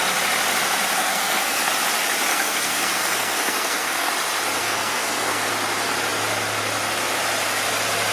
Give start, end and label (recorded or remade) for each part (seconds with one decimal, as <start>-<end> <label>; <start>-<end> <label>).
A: 0.0-1.0 recorded; 1.0-1.7 remade; 1.7-2.3 recorded; 2.3-4.1 remade; 4.1-4.6 recorded; 4.6-5.5 remade; 5.5-8.1 recorded